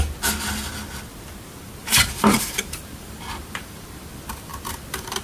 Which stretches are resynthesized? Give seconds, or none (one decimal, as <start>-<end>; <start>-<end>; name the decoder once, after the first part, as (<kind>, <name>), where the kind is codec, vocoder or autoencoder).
1.8-4.0 (vocoder, BigVGAN v2)